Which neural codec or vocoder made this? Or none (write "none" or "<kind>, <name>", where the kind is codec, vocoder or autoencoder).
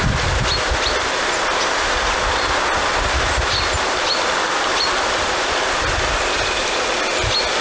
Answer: none